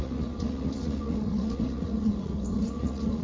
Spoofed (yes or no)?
yes